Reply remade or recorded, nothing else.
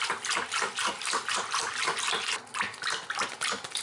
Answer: recorded